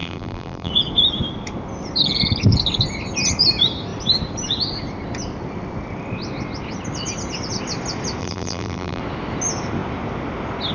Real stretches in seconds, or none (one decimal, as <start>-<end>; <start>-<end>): 0.7-8.2; 9.0-10.7